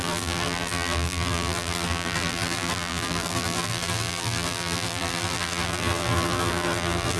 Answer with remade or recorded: remade